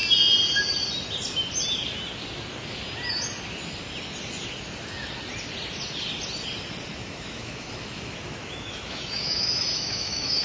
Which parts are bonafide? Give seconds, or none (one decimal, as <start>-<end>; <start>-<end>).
0.0-7.0